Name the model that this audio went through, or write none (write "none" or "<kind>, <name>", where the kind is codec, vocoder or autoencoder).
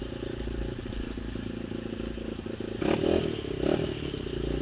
none